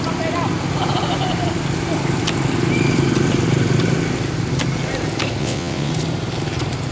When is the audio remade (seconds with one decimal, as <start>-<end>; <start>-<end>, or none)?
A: 5.4-5.9